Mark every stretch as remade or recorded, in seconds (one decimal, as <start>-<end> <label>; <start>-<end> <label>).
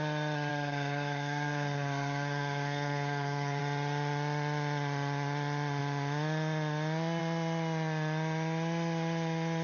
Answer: 0.0-0.5 recorded; 0.5-3.6 remade; 3.6-9.6 recorded